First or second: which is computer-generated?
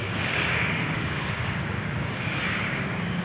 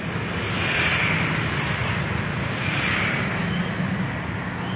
first